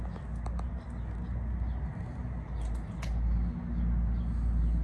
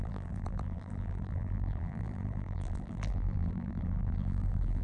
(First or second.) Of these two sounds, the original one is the first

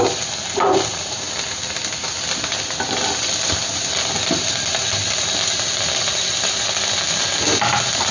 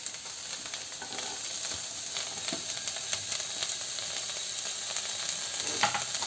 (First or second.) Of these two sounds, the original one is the second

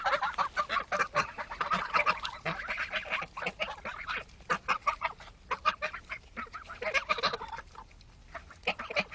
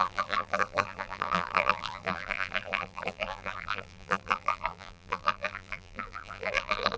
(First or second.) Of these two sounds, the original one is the first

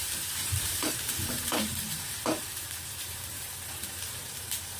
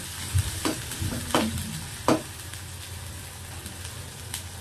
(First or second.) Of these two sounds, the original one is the second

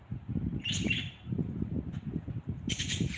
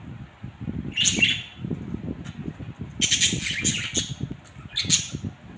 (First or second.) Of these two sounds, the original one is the second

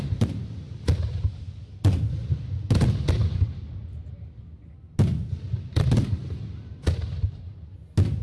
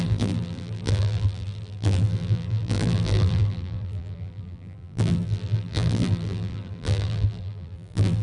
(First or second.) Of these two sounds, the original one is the first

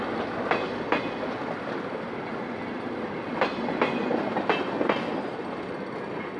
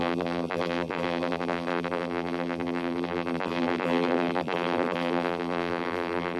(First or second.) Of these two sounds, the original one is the first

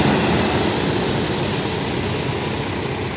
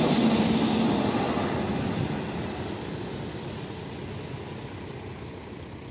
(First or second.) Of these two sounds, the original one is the first